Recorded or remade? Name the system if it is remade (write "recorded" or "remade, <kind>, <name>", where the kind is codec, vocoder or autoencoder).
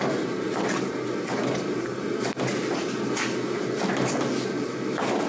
recorded